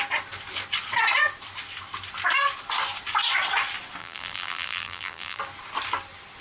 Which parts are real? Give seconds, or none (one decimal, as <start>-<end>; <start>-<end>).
0.0-4.0; 5.4-6.4